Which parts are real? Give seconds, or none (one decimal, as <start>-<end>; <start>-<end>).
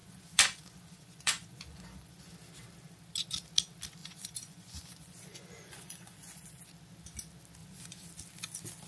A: 2.3-4.0; 6.7-7.6; 8.1-8.9